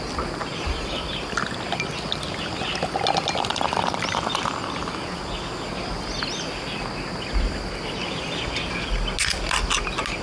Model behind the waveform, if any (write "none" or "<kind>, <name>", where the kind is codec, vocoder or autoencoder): none